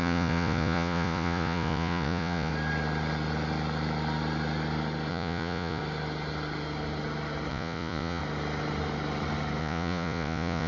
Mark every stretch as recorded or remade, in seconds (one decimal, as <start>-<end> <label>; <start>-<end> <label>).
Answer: 0.0-2.5 remade; 2.5-5.1 recorded; 5.1-5.8 remade; 5.8-7.5 recorded; 7.5-8.2 remade; 8.2-9.6 recorded; 9.6-10.7 remade